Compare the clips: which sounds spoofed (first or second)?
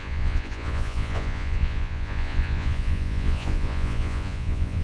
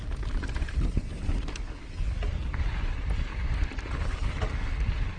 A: first